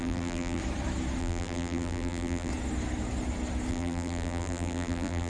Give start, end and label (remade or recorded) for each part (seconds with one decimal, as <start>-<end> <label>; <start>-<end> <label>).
0.0-0.6 remade; 0.6-1.2 recorded; 1.2-2.5 remade; 2.5-3.7 recorded; 3.7-5.3 remade